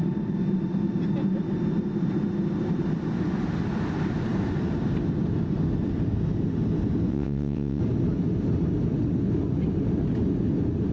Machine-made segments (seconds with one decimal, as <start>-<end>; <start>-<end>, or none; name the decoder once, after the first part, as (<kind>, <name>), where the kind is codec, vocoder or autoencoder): 7.1-7.8 (vocoder, WaveNeXt)